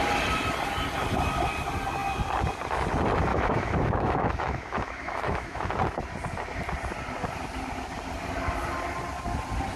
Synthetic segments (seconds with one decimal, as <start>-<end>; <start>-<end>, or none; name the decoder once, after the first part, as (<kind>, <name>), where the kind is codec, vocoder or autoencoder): 3.3-5.7 (autoencoder, DAC-VAE)

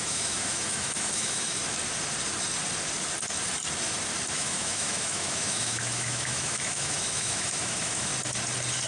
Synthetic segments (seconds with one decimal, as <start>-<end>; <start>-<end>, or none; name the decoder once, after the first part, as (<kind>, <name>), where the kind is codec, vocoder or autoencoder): 0.0-1.6 (autoencoder, DAC-VAE); 4.3-8.1

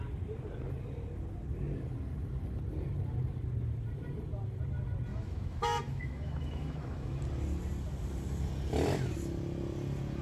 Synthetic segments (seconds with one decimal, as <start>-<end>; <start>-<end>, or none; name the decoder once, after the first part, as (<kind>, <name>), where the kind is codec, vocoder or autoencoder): 5.1-7.2 (autoencoder, DAC-VAE)

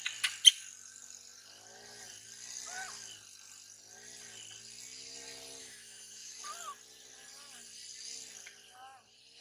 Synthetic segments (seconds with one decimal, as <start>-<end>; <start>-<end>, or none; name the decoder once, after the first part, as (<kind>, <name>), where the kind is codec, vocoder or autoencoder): 5.6-6.4 (autoencoder, DAC-VAE)

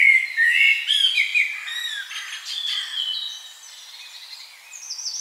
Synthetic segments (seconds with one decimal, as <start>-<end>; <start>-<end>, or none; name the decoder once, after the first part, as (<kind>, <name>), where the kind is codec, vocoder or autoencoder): none